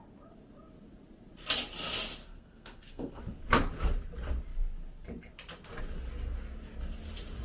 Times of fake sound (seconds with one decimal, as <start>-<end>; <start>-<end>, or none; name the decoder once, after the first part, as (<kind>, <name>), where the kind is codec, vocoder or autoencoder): 2.2-3.2 (codec, SNAC)